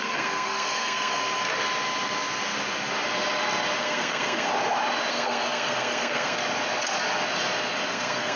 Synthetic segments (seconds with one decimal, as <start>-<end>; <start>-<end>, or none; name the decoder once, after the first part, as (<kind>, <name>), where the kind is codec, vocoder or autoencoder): 0.0-1.2 (codec, SNAC); 3.8-4.5; 5.1-6.4; 7.9-8.4